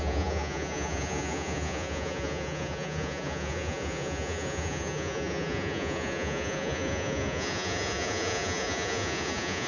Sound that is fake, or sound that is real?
fake